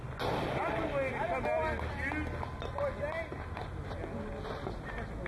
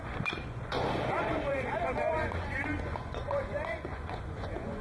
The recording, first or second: first